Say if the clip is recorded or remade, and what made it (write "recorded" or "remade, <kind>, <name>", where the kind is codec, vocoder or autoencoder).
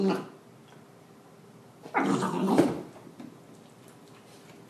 recorded